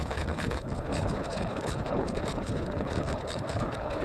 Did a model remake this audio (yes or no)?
yes